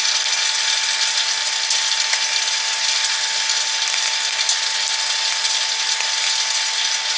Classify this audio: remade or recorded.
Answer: recorded